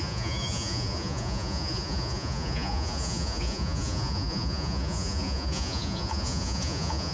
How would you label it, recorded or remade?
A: remade